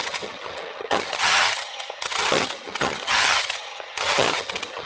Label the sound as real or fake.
fake